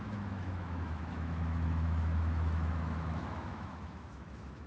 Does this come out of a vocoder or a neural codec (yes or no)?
yes